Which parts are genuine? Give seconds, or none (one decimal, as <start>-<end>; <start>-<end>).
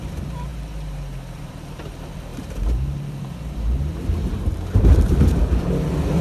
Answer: 0.0-2.3; 5.7-6.2